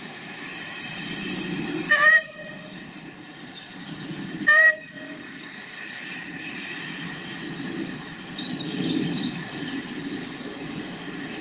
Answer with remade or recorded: remade